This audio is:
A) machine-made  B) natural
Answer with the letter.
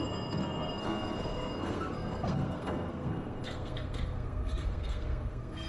A